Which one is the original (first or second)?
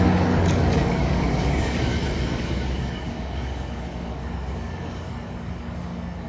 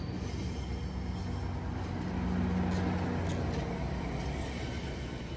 second